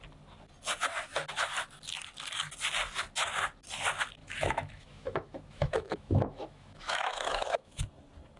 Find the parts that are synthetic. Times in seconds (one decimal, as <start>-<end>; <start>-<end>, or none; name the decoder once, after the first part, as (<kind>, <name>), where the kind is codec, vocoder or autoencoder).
4.2-7.8 (autoencoder, DAC-VAE)